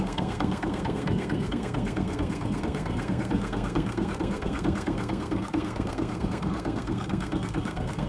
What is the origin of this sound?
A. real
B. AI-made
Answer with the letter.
B